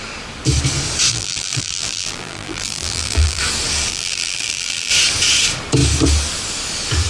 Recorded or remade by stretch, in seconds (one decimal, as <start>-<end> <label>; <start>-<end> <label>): 0.0-1.1 recorded; 1.1-3.4 remade; 3.4-3.9 recorded; 3.9-4.9 remade; 4.9-7.1 recorded